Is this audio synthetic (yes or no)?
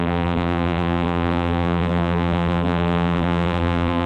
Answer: yes